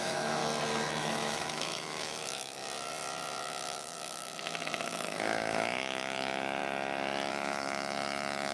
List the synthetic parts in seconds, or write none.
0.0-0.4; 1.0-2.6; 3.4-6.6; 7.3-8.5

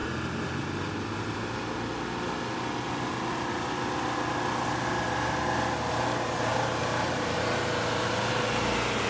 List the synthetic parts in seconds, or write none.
6.5-7.4